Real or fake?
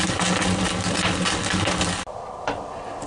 real